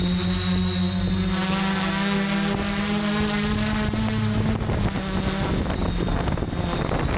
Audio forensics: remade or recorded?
recorded